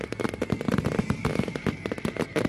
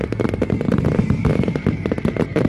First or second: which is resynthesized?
second